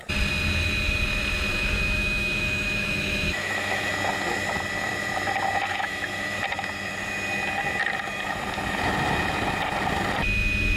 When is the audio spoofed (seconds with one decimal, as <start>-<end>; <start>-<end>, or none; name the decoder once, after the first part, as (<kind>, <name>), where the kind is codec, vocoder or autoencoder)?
1.5-3.9 (autoencoder, DAC-VAE); 5.7-6.4

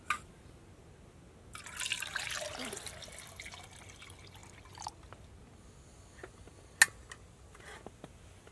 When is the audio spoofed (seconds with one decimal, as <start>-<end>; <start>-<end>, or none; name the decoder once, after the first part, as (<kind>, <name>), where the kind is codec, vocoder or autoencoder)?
none

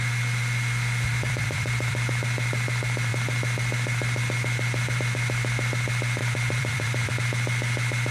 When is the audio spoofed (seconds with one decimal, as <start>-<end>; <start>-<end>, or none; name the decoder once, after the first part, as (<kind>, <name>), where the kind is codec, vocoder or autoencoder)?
1.1-2.1 (vocoder, BigVGAN v2); 6.2-7.1